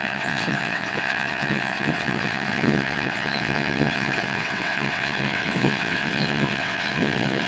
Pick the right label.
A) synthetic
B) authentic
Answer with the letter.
A